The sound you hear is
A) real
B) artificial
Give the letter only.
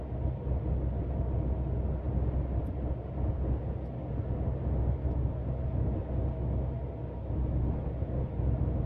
A